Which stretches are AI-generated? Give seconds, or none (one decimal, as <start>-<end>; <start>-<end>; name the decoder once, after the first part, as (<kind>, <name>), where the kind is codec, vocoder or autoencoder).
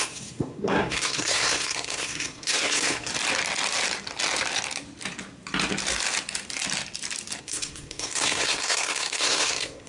0.0-3.1 (codec, SNAC); 7.4-9.9